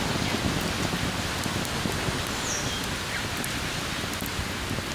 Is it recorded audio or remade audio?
recorded